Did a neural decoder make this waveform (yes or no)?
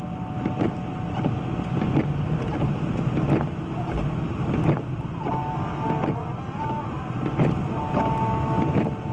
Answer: no